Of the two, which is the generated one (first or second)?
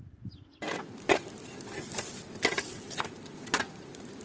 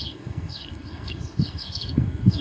second